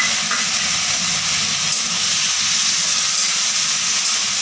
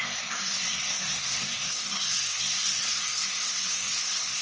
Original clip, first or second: first